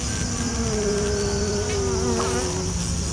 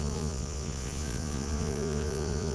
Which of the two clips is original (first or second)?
first